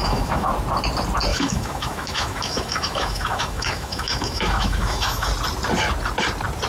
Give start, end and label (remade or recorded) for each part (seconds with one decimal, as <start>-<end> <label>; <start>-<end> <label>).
0.0-0.5 remade; 0.5-1.3 recorded; 1.3-5.3 remade; 5.3-6.7 recorded